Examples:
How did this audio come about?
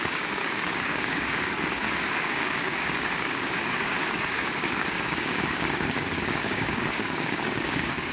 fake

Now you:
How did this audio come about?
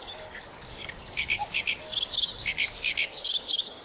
fake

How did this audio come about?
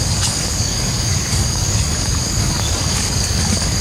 fake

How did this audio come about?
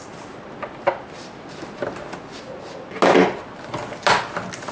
real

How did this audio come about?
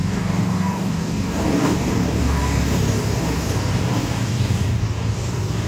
fake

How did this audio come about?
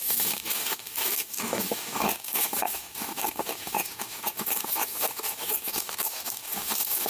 fake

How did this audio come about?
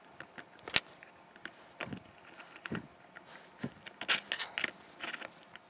real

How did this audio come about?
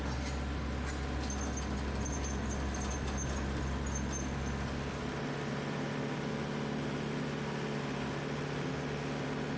real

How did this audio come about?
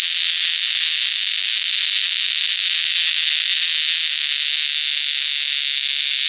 real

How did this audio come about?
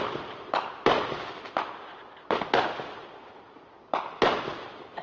real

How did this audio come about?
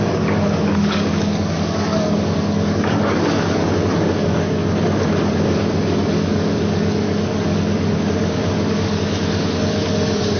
fake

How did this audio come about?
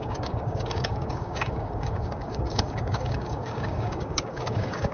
fake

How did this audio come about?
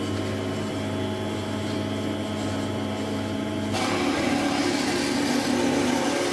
real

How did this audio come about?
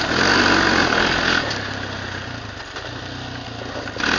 real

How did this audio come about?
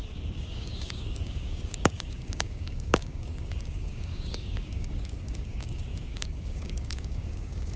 fake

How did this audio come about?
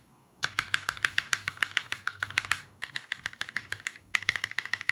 fake